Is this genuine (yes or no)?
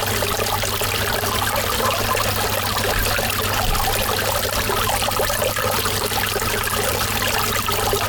yes